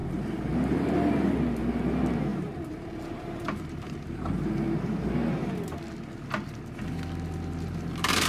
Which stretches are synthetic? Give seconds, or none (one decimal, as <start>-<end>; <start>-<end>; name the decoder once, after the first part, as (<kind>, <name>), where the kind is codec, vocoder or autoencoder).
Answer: 0.0-0.9 (vocoder, BigVGAN v2); 2.3-4.5